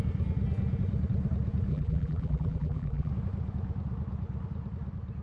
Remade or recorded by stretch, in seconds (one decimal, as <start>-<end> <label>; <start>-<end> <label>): 0.0-1.7 recorded; 1.7-3.1 remade; 3.1-5.2 recorded